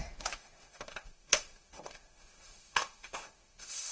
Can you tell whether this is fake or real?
fake